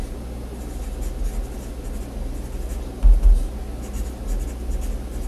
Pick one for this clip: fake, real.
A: real